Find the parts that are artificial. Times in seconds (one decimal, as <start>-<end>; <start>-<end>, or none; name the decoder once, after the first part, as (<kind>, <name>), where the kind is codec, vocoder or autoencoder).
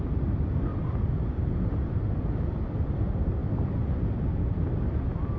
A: none